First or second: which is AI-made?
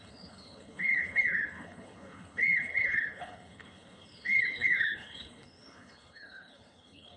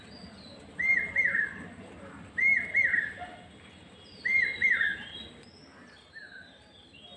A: first